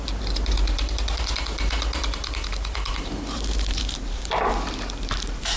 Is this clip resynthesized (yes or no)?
yes